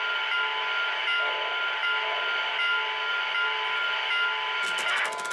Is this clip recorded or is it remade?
recorded